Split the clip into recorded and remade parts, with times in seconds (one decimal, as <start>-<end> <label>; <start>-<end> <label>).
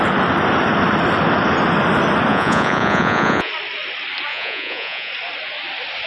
0.0-2.3 recorded; 2.3-3.5 remade; 3.5-4.3 recorded; 4.3-5.1 remade; 5.1-6.1 recorded